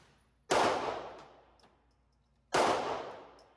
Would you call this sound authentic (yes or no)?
yes